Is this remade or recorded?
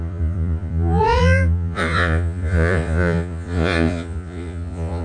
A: remade